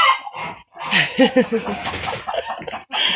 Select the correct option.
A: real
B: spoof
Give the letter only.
A